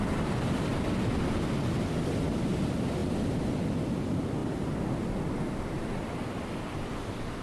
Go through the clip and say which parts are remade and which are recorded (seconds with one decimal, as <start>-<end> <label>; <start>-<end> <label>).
0.0-7.4 recorded